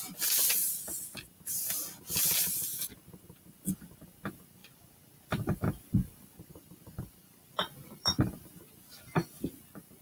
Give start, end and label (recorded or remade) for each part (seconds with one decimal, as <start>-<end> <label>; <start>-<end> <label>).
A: 0.0-4.6 recorded; 4.6-8.4 remade; 8.4-10.0 recorded

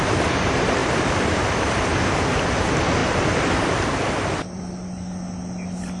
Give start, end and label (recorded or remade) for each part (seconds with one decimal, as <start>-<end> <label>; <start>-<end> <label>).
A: 0.0-0.8 recorded; 0.8-2.2 remade; 2.2-3.0 recorded; 3.0-4.6 remade; 4.6-6.0 recorded

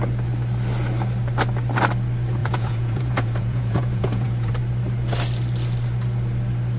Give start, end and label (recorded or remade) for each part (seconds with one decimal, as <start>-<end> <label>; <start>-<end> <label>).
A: 0.0-2.4 recorded; 2.4-4.5 remade; 4.5-6.8 recorded

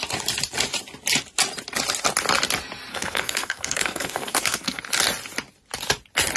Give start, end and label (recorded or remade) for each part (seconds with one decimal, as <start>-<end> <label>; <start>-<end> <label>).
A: 0.0-2.9 recorded; 2.9-4.8 remade; 4.8-6.4 recorded

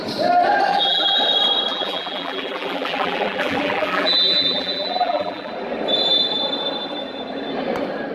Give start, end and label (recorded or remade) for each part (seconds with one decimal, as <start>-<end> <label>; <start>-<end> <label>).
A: 0.0-0.7 recorded; 0.7-1.2 remade; 1.2-1.7 recorded; 1.7-5.5 remade; 5.5-8.1 recorded

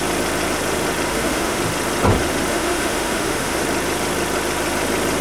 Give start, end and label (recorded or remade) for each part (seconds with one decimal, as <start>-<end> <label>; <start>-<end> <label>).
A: 0.0-1.1 recorded; 1.1-1.6 remade; 1.6-2.5 recorded; 2.5-3.6 remade; 3.6-5.2 recorded

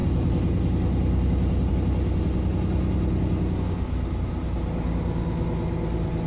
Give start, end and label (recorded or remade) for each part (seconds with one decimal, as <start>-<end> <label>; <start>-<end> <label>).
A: 0.0-6.3 recorded